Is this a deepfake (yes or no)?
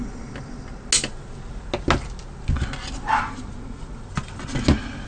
no